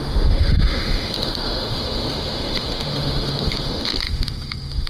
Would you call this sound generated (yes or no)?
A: yes